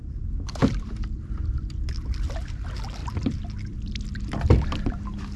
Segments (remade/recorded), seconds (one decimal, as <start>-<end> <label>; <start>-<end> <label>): 0.0-0.6 recorded; 0.6-1.4 remade; 1.4-3.0 recorded; 3.0-5.4 remade